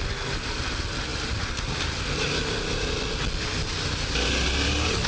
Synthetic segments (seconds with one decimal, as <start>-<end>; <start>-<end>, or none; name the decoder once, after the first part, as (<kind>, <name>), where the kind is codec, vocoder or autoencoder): none